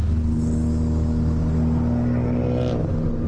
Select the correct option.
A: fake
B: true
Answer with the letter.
B